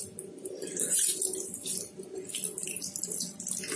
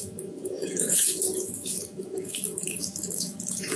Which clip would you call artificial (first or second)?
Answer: second